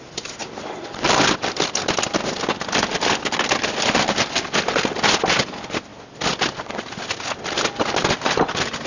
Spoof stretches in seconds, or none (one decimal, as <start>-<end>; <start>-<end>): none